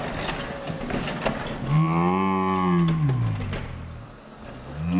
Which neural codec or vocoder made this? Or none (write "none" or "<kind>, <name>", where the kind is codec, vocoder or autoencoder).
none